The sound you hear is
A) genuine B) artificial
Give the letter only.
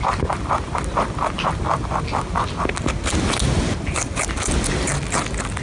A